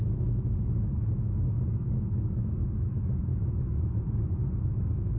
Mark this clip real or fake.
fake